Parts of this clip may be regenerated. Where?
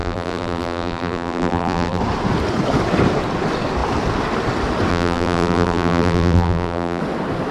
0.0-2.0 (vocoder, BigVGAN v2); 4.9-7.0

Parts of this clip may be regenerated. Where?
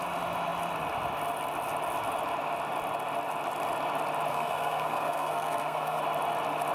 4.3-6.0 (codec, SNAC)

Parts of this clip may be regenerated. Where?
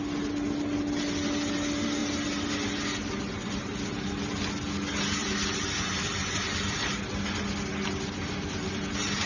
none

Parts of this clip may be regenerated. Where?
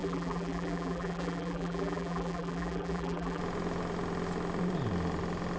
0.0-3.4 (vocoder, BigVGAN v2)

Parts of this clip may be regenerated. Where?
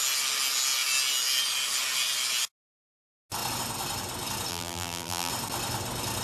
4.5-5.3 (vocoder, BigVGAN v2)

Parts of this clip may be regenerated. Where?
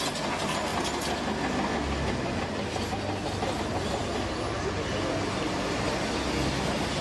none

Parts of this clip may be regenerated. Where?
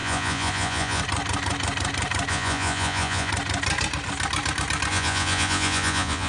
0.0-1.0 (vocoder, Vocos); 2.3-3.3; 4.9-6.3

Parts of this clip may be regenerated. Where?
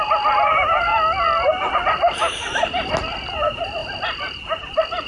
0.0-0.9 (vocoder, BigVGAN v2); 1.7-5.1